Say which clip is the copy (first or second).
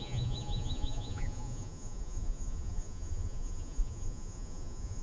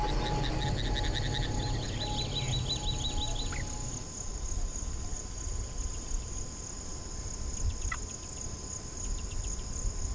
first